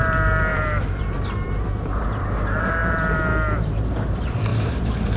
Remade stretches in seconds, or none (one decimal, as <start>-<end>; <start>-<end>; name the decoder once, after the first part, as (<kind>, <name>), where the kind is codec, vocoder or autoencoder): 0.0-5.2 (vocoder, BigVGAN v2)